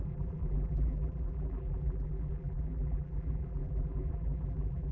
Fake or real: fake